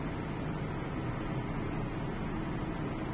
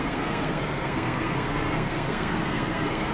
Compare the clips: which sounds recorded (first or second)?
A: first